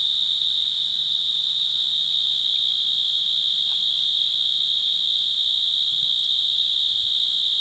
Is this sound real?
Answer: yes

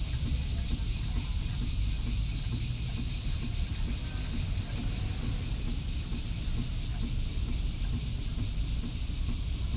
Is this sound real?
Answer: yes